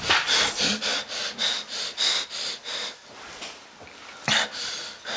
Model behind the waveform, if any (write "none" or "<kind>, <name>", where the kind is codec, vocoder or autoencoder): none